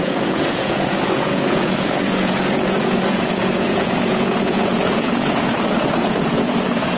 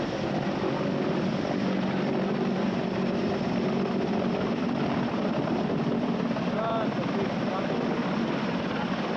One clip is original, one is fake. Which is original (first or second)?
second